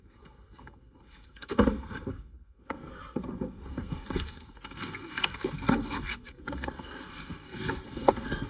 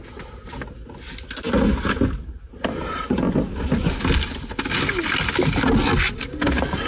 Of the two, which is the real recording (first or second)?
second